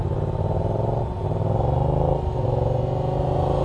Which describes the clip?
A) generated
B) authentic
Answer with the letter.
B